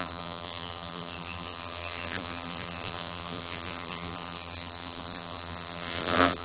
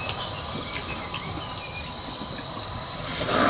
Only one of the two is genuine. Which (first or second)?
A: second